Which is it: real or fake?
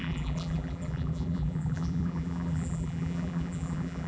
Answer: fake